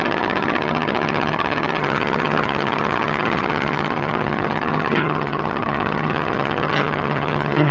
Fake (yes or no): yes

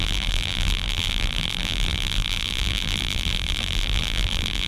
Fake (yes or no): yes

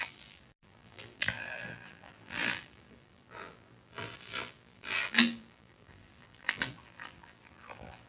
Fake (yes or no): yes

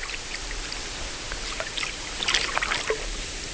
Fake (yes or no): yes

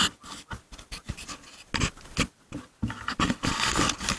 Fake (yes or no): no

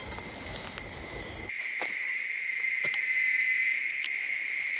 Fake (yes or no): no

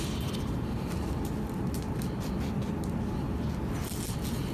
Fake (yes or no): no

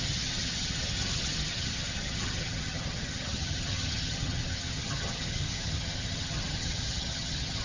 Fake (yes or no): yes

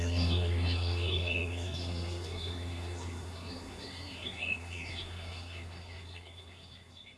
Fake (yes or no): yes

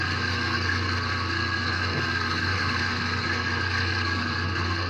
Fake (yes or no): yes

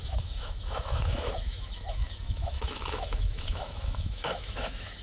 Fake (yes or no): yes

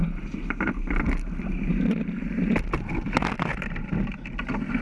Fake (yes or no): no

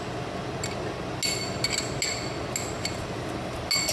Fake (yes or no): no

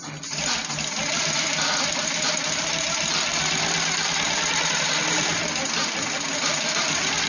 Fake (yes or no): no